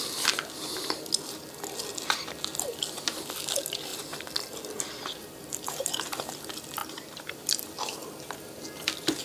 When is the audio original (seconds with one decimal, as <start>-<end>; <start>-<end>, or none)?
0.0-5.2; 6.3-6.8; 7.3-9.2